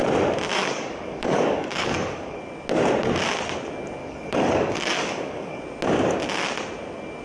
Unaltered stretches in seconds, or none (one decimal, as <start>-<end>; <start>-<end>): 0.0-0.6; 2.4-4.0; 5.6-7.2